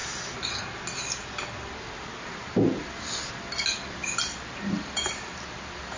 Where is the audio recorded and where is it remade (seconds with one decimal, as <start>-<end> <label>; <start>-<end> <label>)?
0.0-4.0 recorded; 4.0-6.0 remade